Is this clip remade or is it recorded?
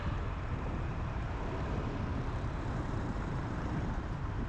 remade